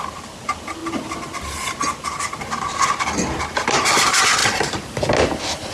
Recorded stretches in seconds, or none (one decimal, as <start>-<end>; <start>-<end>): 0.0-4.4; 5.1-5.7